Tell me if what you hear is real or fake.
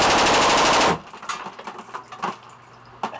real